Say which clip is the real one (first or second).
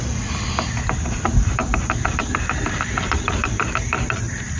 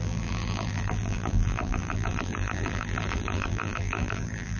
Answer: first